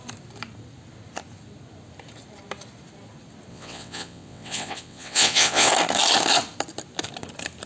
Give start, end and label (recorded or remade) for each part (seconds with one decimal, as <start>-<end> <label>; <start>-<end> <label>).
0.0-3.5 recorded; 3.5-5.7 remade; 5.7-7.7 recorded